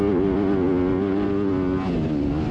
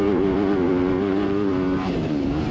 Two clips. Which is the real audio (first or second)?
first